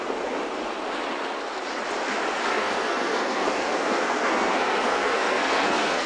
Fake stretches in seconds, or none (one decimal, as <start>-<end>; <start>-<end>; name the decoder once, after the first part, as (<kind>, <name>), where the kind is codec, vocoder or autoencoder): 2.5-6.1 (codec, SNAC)